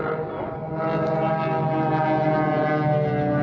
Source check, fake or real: real